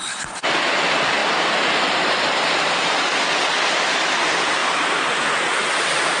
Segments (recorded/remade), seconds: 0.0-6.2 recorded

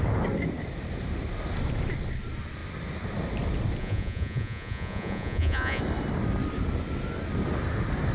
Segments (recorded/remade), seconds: 0.0-3.8 recorded; 3.8-5.8 remade; 5.8-8.1 recorded

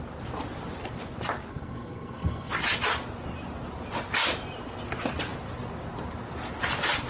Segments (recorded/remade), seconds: 0.0-1.5 recorded; 1.5-2.5 remade; 2.5-7.1 recorded

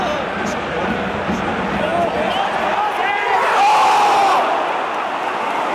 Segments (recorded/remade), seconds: 0.0-5.7 recorded

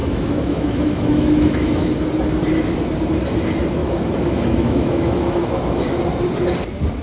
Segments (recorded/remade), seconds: 0.0-1.9 remade; 1.9-3.8 recorded; 3.8-6.0 remade; 6.0-7.0 recorded

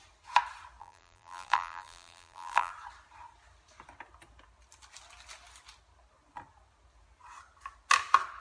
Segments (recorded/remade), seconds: 0.0-0.8 recorded; 0.8-2.7 remade; 2.7-8.4 recorded